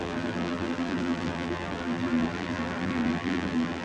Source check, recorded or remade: remade